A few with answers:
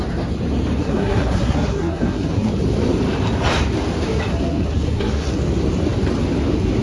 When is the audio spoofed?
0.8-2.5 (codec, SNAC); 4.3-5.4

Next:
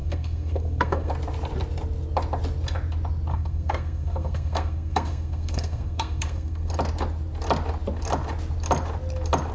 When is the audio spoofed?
0.0-1.1 (codec, SNAC); 3.3-6.7

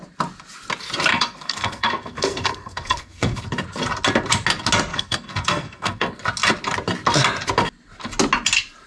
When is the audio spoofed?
1.1-3.4 (codec, SNAC); 4.9-6.2

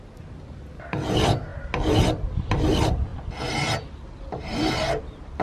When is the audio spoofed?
none

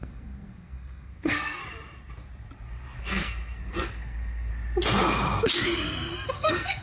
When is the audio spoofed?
0.0-1.6 (codec, SNAC); 3.0-4.5; 6.3-6.8

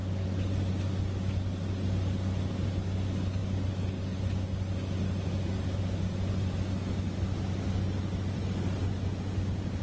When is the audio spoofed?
none

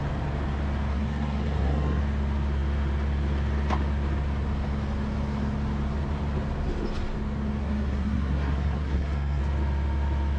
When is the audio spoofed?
0.9-2.0 (codec, SNAC); 7.6-9.4